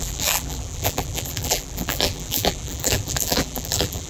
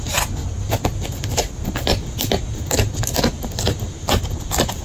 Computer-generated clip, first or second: first